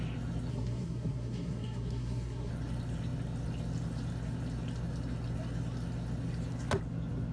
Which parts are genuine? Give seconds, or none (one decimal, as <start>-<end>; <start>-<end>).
0.0-0.5; 2.5-7.3